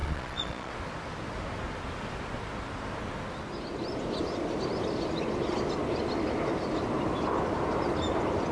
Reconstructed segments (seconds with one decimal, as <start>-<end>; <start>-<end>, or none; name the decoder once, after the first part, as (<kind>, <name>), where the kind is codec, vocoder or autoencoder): 0.0-0.7 (vocoder, Vocos)

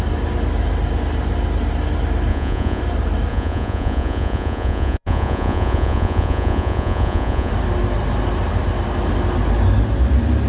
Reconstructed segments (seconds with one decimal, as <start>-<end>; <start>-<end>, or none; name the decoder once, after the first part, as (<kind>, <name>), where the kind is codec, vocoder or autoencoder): 2.3-2.8 (vocoder, Vocos); 3.3-7.5